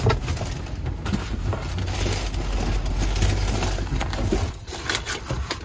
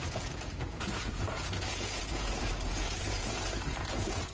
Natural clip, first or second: first